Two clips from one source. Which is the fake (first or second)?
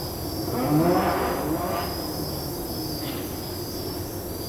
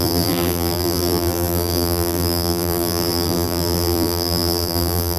second